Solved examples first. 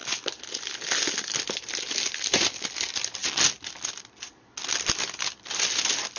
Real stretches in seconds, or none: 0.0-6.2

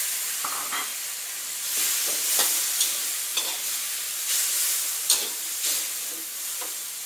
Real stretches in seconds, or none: 3.3-4.3

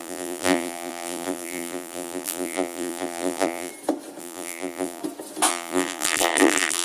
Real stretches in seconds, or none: 3.7-4.2; 5.0-5.5

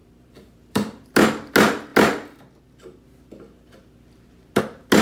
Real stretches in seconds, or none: 1.1-5.0